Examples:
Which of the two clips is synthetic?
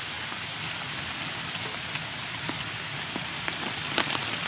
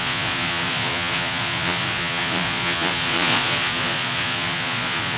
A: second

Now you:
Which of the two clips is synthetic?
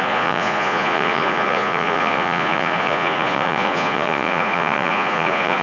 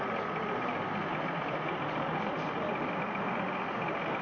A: first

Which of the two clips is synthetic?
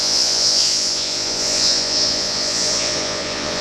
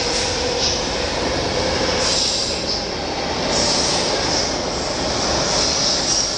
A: first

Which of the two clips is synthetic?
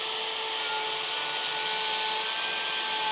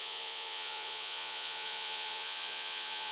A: second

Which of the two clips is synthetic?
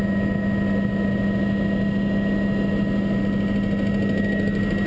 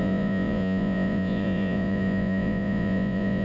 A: second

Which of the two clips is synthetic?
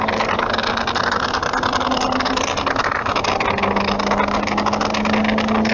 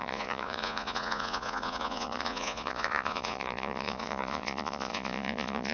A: second